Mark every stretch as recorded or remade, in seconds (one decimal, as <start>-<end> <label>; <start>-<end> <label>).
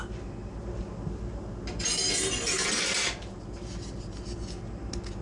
0.0-2.1 recorded; 2.1-3.6 remade; 3.6-5.2 recorded